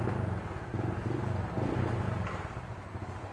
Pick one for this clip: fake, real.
real